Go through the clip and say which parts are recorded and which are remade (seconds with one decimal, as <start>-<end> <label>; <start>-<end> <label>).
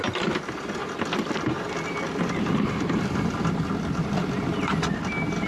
0.0-5.5 recorded